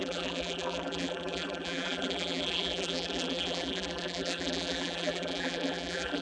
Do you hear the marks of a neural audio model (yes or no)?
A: yes